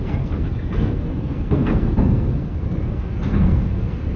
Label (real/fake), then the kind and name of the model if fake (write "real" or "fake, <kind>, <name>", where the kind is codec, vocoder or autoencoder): fake, codec, SNAC